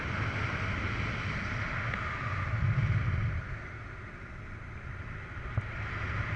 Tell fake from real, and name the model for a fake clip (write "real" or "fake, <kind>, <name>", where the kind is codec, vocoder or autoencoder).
real